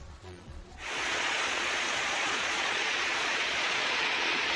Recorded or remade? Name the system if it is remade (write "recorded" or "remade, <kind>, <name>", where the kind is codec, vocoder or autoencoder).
remade, vocoder, Vocos